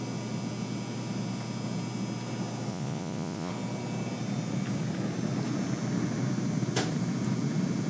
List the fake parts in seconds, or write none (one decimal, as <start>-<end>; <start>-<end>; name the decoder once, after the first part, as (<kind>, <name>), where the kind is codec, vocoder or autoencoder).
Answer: 2.7-3.5 (vocoder, Vocos)